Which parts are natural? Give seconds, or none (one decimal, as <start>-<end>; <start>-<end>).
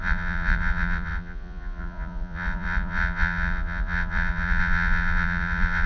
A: none